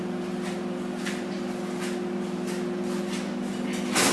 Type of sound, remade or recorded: recorded